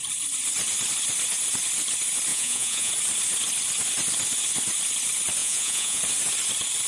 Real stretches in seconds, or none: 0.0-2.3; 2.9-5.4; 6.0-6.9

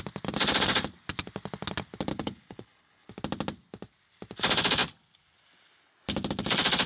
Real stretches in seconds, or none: 0.0-2.1; 3.1-6.9

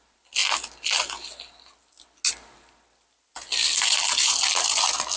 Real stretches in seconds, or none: 0.0-5.2

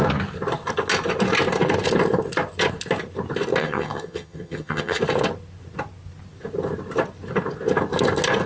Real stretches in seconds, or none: 0.0-3.6; 5.0-8.5

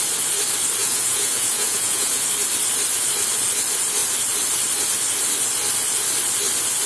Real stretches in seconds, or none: 0.0-0.8; 2.3-6.9

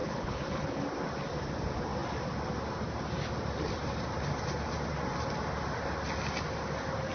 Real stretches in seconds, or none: 0.8-7.1